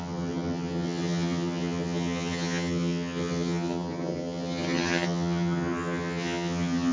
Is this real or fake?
fake